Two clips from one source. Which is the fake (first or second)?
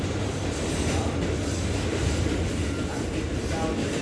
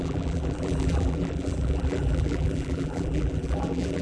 second